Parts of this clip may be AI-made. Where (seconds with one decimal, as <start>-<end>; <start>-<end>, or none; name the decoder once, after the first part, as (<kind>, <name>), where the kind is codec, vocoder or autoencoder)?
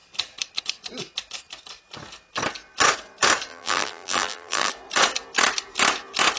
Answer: 3.5-4.7 (vocoder, BigVGAN v2)